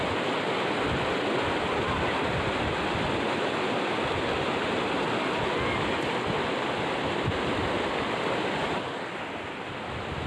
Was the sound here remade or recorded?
recorded